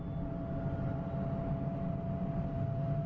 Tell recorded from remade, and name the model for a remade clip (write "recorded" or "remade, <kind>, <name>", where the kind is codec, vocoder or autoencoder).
recorded